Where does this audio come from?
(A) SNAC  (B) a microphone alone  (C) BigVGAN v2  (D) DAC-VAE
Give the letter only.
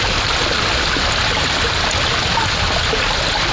B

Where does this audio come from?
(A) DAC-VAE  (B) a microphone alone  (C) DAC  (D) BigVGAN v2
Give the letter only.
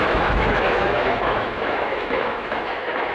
A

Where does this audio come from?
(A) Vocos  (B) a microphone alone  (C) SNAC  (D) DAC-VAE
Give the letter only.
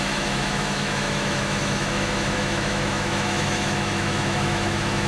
D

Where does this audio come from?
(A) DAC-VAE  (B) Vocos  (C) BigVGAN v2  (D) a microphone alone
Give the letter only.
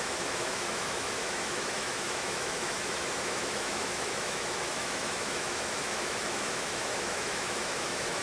A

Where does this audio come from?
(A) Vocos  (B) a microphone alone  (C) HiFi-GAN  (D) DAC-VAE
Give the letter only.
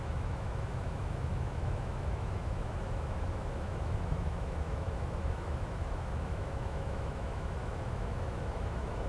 D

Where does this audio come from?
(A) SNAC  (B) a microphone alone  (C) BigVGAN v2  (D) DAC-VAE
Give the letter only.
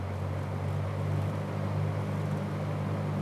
B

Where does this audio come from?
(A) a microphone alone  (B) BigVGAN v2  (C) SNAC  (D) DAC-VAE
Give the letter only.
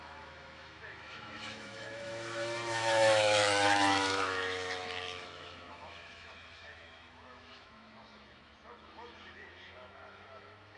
D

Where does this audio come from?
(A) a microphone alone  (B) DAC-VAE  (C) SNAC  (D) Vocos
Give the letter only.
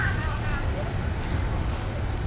A